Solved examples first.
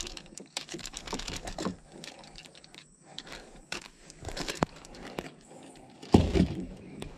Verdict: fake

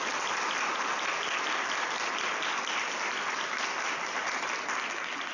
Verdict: real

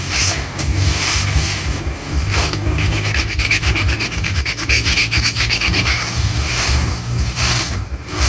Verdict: fake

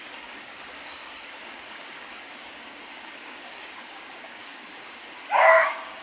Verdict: fake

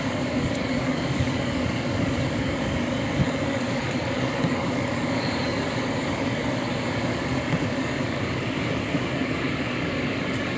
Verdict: fake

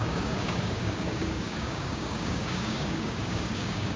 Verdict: fake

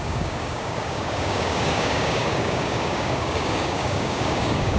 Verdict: fake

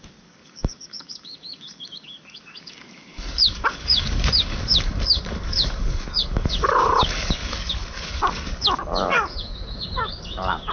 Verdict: fake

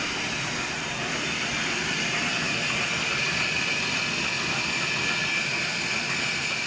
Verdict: real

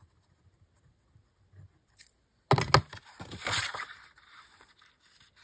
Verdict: real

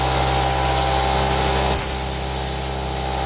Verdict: real